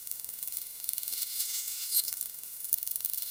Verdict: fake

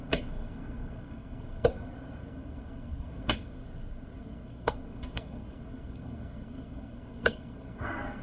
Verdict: fake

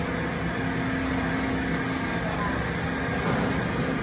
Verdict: real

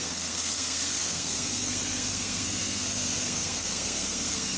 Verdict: fake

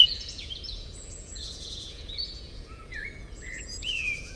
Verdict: fake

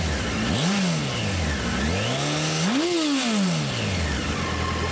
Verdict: real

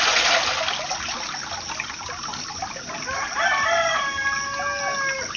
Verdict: real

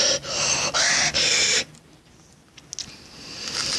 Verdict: real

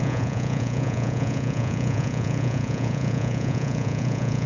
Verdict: fake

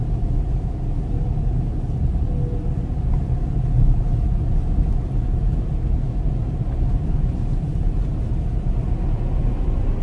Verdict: real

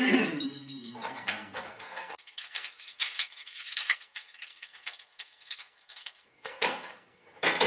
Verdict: fake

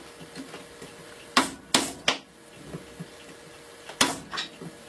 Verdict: real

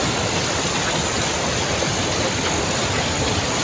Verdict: real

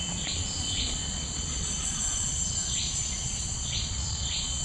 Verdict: fake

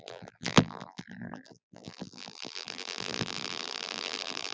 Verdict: fake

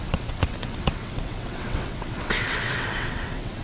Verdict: fake